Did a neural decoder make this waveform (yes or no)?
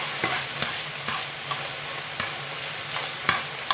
no